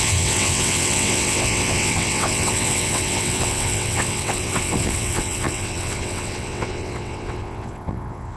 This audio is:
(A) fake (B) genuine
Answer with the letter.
A